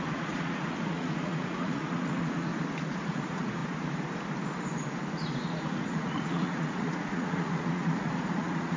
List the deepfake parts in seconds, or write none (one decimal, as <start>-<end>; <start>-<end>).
0.0-2.5; 3.0-3.6; 5.1-8.8